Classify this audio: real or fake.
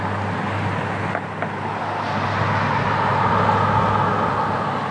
real